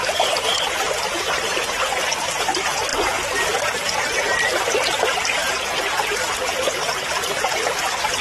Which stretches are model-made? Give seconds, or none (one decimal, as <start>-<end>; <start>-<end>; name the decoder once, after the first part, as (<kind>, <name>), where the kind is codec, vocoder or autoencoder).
0.0-8.2 (vocoder, BigVGAN v2)